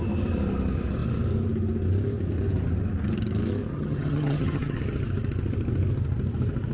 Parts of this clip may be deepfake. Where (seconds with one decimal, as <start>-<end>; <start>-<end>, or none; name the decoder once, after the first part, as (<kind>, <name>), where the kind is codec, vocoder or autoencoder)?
3.7-4.8 (vocoder, HiFi-GAN)

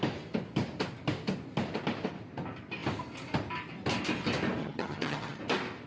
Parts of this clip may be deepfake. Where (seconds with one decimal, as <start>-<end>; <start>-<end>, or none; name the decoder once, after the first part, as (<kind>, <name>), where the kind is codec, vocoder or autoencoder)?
4.6-5.4 (vocoder, HiFi-GAN)

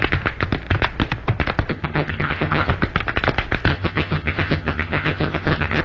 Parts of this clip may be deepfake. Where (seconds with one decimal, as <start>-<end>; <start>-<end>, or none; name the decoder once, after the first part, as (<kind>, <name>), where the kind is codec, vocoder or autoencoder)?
1.7-2.7 (vocoder, HiFi-GAN); 3.7-5.8